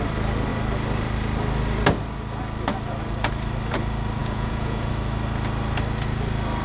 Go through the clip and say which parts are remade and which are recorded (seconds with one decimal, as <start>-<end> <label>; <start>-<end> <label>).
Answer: 0.0-4.2 recorded; 4.2-4.9 remade; 4.9-6.6 recorded